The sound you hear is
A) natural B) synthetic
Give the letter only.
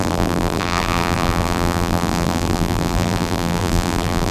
B